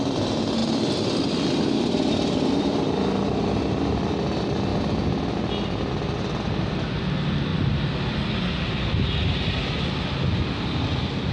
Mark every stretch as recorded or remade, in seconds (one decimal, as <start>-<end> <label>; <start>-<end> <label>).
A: 0.0-0.6 recorded; 0.6-2.8 remade; 2.8-11.3 recorded